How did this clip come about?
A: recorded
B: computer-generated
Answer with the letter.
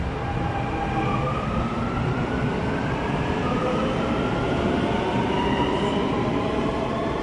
B